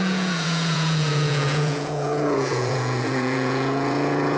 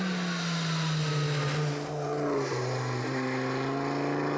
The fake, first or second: first